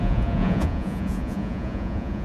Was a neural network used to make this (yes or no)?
yes